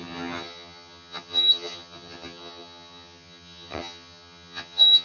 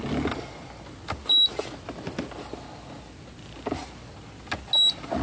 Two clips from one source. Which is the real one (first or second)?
second